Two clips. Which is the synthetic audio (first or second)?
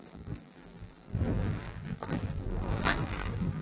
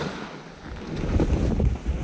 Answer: first